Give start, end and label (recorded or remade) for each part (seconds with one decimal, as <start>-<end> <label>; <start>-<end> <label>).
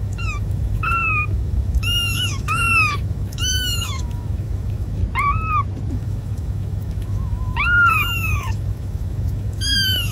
0.0-5.0 remade; 5.0-5.9 recorded; 5.9-10.1 remade